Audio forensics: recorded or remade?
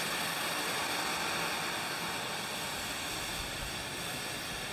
recorded